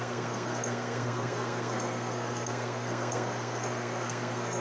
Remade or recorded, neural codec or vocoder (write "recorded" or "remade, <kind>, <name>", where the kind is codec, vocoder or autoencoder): remade, codec, SNAC